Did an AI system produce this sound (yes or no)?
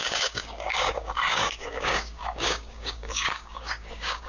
yes